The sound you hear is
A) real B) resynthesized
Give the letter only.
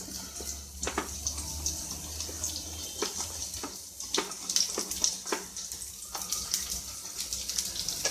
A